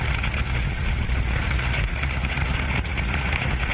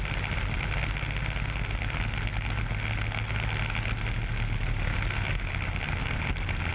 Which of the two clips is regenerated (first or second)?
first